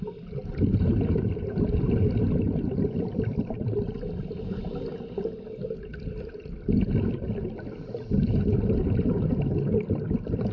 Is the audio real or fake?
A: real